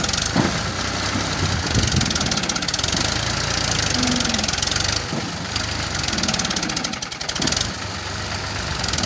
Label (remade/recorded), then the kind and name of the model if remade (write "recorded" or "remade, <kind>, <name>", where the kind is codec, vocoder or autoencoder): recorded